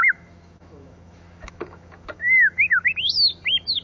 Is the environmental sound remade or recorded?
remade